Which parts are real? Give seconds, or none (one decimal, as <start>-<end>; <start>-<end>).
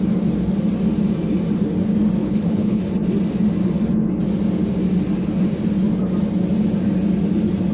0.0-2.2; 2.8-7.7